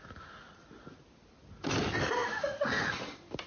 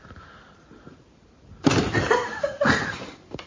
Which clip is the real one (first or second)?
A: first